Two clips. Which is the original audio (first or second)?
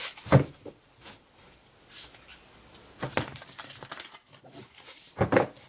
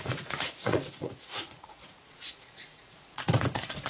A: first